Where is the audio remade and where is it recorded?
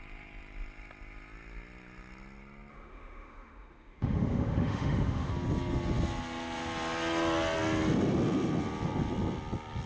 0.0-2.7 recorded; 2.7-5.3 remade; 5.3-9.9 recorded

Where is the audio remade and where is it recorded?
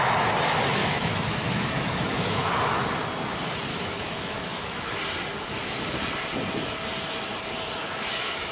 0.0-0.8 recorded; 0.8-2.5 remade; 2.5-3.7 recorded; 3.7-5.0 remade; 5.0-7.8 recorded; 7.8-8.5 remade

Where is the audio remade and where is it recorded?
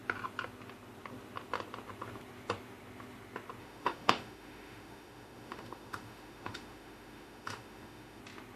0.0-3.6 recorded; 3.6-8.2 remade; 8.2-8.6 recorded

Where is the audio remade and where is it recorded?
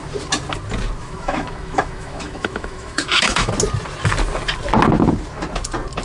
0.0-1.0 recorded; 1.0-3.5 remade; 3.5-6.0 recorded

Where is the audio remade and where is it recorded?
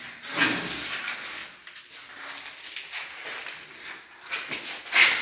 0.0-5.2 recorded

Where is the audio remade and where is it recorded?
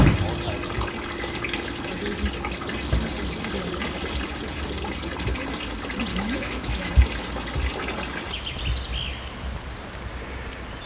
0.0-6.1 recorded; 6.1-6.9 remade; 6.9-10.9 recorded